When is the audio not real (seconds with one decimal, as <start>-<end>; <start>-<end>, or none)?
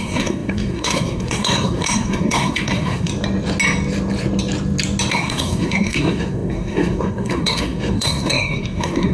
0.0-3.1; 5.1-9.1